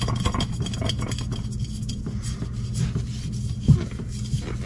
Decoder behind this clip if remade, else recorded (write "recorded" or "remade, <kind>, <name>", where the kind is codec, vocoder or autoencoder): recorded